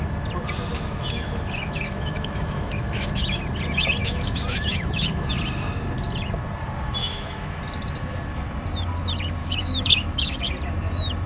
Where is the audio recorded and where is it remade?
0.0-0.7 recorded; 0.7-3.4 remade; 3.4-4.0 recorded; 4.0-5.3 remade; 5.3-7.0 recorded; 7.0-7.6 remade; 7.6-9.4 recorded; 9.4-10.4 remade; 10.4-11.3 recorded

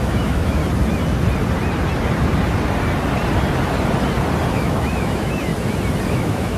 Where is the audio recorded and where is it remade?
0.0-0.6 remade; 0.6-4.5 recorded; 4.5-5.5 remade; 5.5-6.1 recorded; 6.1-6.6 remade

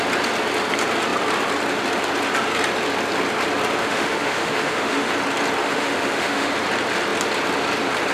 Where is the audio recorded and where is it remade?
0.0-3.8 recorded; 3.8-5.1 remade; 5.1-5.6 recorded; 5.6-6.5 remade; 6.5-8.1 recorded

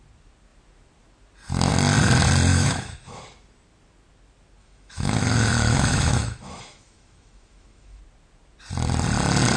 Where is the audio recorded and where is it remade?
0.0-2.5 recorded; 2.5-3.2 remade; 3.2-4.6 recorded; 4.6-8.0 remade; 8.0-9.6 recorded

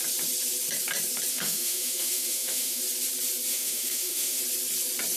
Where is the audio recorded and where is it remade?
0.0-1.3 recorded; 1.3-2.8 remade; 2.8-3.5 recorded; 3.5-4.4 remade; 4.4-5.2 recorded